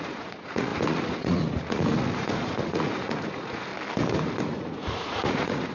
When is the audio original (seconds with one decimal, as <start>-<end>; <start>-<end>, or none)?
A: 3.7-4.4